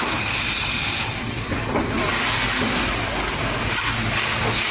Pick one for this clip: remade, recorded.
recorded